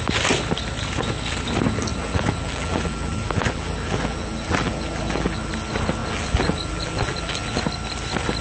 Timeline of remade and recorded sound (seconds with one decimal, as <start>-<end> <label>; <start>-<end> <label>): 0.0-1.9 recorded; 1.9-5.5 remade; 5.5-6.0 recorded; 6.0-7.6 remade; 7.6-8.4 recorded

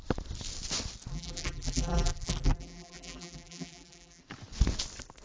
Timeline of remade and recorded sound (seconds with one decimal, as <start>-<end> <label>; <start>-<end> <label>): 0.0-1.1 recorded; 1.1-4.2 remade; 4.2-5.2 recorded